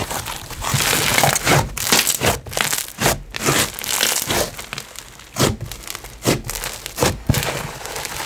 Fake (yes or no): no